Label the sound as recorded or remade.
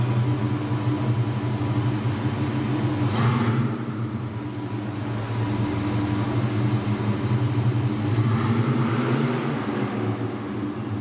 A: recorded